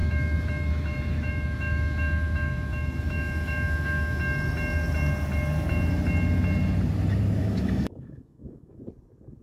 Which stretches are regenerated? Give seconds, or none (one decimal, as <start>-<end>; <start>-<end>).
0.0-4.2; 7.4-8.8